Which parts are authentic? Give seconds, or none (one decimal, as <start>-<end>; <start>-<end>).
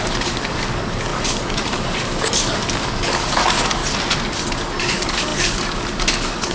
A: 3.8-4.8